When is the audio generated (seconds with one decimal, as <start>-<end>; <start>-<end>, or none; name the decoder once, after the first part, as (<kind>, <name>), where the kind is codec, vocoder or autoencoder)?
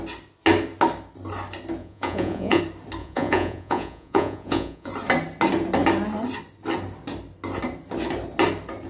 1.8-2.6 (vocoder, Vocos); 3.0-4.9